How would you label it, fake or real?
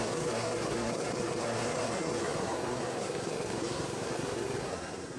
fake